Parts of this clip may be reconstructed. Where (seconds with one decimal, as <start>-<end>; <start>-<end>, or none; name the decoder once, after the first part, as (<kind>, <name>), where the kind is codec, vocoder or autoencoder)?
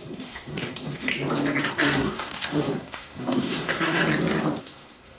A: 0.0-1.1 (codec, SNAC); 1.7-4.0; 4.6-5.2